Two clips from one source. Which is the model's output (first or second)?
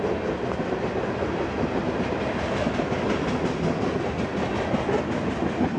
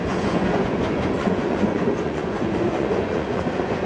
second